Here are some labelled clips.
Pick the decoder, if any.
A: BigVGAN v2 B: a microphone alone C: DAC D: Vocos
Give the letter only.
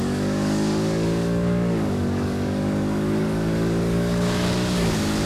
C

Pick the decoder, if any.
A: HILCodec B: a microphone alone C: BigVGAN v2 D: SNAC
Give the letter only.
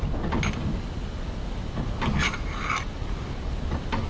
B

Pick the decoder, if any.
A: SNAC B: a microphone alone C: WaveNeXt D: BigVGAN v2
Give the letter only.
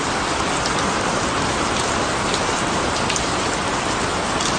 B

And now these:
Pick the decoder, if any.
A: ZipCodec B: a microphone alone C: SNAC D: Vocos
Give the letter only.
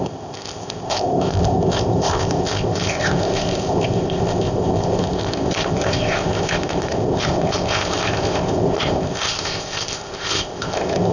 A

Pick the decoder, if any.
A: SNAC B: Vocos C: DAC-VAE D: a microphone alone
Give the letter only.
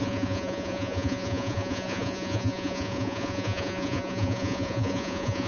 B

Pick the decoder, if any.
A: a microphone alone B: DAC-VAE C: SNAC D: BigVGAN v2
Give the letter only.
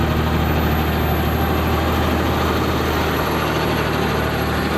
A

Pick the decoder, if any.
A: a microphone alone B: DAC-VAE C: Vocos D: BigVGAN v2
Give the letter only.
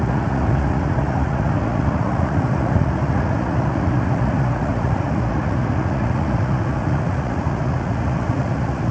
C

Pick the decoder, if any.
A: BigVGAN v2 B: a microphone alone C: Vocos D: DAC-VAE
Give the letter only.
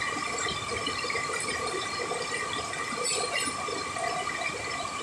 B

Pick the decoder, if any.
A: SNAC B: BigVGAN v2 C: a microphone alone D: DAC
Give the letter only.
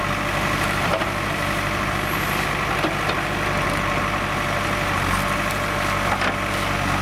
C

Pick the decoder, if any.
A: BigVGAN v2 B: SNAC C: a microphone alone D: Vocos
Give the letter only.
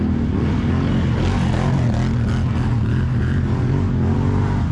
C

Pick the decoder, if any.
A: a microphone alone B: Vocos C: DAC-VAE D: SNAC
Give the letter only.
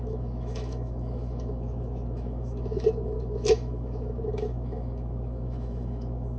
C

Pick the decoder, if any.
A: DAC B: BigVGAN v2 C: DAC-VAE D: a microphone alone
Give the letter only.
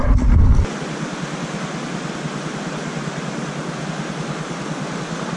D